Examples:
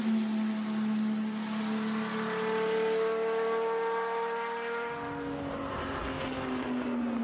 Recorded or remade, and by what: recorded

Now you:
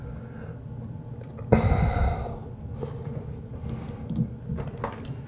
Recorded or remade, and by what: recorded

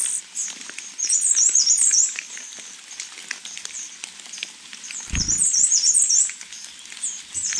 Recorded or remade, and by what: recorded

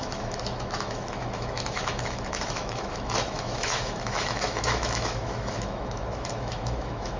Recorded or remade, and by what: remade, autoencoder, DAC-VAE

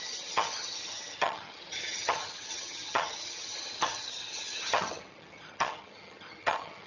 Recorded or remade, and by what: remade, vocoder, HiFi-GAN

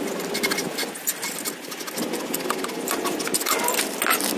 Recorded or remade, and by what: recorded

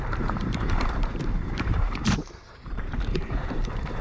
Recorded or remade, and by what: remade, vocoder, BigVGAN v2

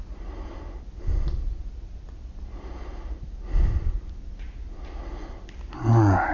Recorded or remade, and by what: recorded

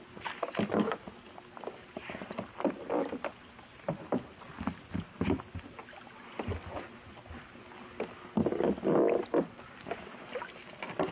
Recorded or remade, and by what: recorded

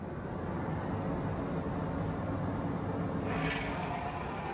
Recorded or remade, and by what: recorded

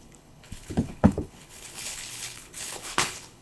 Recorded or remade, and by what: remade, codec, HILCodec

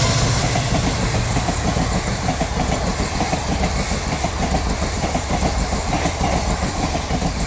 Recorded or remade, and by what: recorded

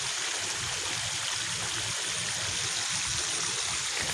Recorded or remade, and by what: recorded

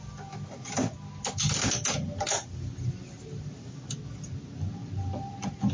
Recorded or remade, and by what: recorded